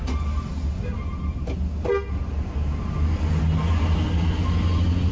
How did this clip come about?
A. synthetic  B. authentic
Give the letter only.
B